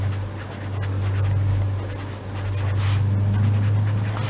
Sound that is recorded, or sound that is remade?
recorded